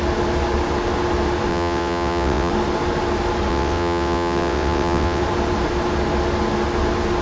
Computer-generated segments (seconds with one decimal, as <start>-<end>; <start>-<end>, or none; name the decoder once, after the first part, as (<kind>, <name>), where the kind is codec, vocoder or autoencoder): 1.5-2.5 (vocoder, WaveNeXt); 3.5-5.2